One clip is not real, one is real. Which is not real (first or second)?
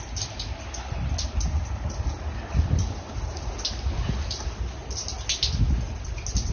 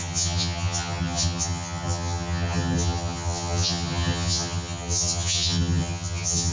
second